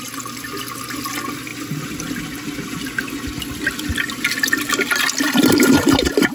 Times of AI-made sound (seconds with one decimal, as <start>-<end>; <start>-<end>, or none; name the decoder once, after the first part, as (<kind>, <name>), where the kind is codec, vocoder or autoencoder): none